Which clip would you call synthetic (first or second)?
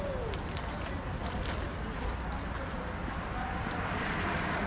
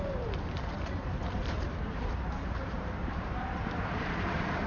second